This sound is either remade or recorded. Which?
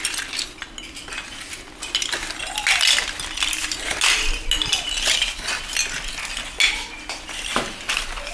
recorded